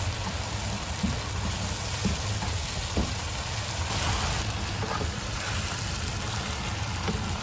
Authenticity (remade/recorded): recorded